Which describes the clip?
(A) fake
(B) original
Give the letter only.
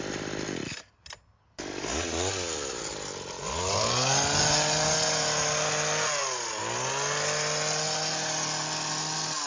B